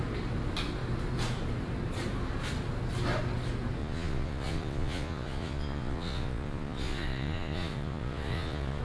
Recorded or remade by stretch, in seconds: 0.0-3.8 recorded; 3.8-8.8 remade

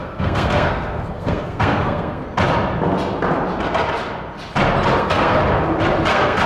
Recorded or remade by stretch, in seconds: 0.0-2.2 remade; 2.2-5.0 recorded; 5.0-5.4 remade; 5.4-6.1 recorded; 6.1-6.5 remade

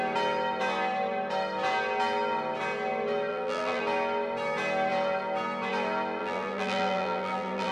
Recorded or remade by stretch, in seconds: 0.0-3.3 recorded; 3.3-3.8 remade; 3.8-6.2 recorded; 6.2-7.7 remade

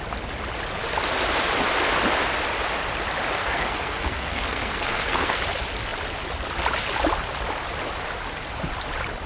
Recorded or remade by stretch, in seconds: 0.0-3.4 recorded; 3.4-5.4 remade; 5.4-9.3 recorded